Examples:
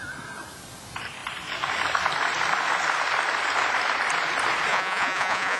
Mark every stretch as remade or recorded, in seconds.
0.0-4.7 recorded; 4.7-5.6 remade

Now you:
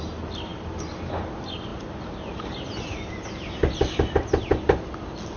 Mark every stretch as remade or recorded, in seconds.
0.0-0.5 recorded; 0.5-1.0 remade; 1.0-1.7 recorded; 1.7-4.9 remade; 4.9-5.4 recorded

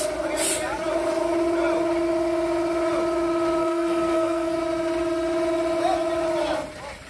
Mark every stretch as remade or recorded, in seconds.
0.0-3.6 recorded; 3.6-4.6 remade; 4.6-7.1 recorded